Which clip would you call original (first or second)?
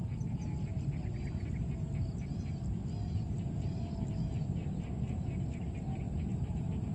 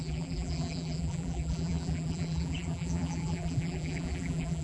first